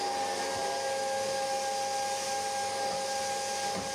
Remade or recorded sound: recorded